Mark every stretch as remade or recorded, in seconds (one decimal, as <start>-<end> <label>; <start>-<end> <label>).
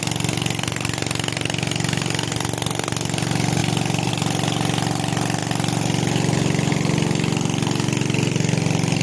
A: 0.0-9.0 recorded